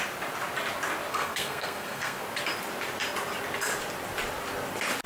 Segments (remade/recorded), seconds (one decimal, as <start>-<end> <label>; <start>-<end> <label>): 0.0-1.1 recorded; 1.1-2.2 remade; 2.2-5.1 recorded